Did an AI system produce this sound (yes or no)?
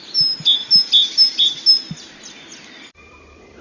no